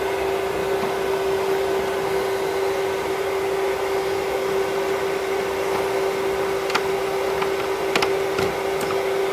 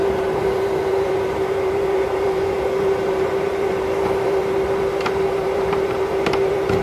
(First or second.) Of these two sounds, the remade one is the second